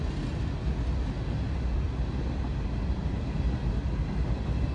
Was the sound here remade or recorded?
recorded